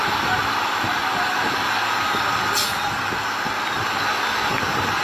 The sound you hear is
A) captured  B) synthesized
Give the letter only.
A